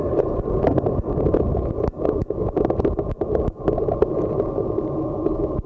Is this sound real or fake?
real